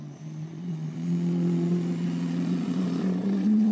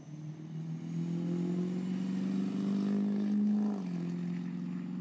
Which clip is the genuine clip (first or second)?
second